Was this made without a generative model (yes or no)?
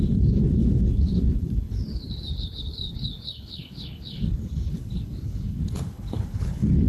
no